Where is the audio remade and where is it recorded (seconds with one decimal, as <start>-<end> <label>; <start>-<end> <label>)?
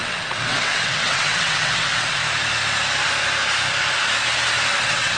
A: 0.0-2.2 remade; 2.2-4.8 recorded; 4.8-5.2 remade